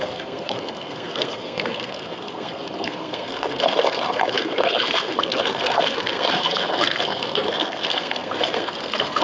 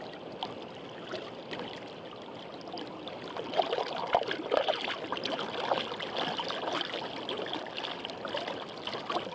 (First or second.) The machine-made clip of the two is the first